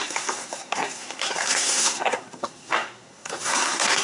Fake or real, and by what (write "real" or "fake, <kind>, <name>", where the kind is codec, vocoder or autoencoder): fake, codec, SNAC